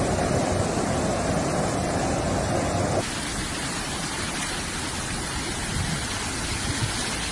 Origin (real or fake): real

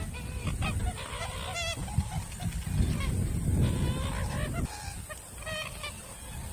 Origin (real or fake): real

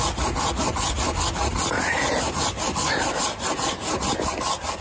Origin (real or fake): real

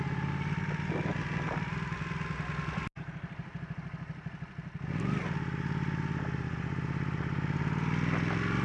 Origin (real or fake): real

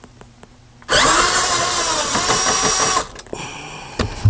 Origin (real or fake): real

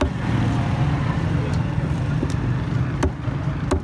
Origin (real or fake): real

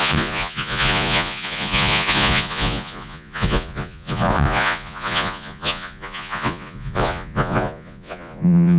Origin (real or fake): fake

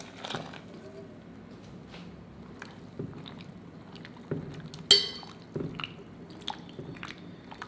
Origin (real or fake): real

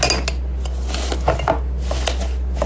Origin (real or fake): real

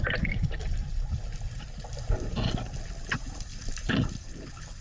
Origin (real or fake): real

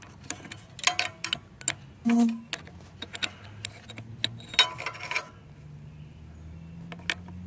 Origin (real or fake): real